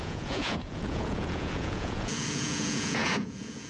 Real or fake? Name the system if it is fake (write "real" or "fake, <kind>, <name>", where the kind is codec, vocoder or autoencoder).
fake, vocoder, Vocos